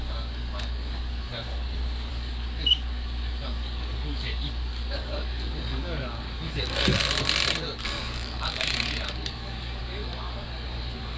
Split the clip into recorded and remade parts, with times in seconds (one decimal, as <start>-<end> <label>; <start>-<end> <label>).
0.0-1.3 remade; 1.3-2.1 recorded; 2.1-6.9 remade; 6.9-7.8 recorded; 7.8-11.2 remade